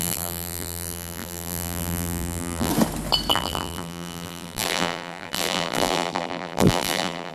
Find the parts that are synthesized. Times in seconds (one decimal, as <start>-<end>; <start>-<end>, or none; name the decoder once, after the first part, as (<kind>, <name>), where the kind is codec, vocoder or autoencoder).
0.0-2.7 (vocoder, BigVGAN v2); 3.3-7.3